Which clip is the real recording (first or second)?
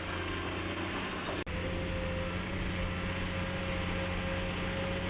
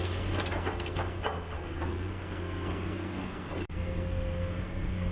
first